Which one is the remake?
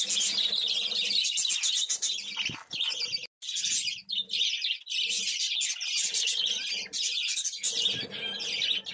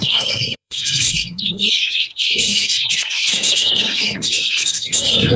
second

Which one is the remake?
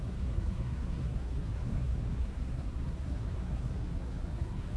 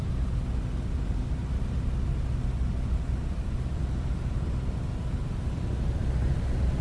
first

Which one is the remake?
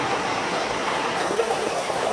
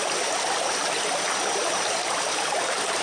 first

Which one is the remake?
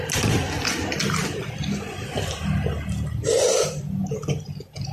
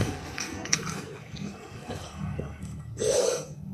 second